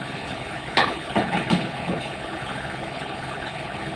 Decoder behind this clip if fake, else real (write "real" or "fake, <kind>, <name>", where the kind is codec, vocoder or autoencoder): fake, codec, HILCodec